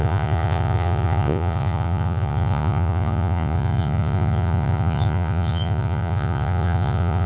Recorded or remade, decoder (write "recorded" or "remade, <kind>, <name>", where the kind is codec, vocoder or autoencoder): remade, vocoder, Vocos